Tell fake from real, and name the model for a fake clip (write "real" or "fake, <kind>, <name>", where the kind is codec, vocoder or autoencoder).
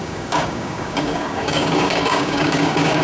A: fake, codec, DAC